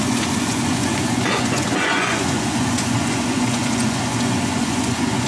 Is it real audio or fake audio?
fake